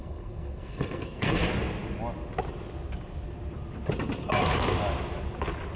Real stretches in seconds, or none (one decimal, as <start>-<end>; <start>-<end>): 1.4-5.8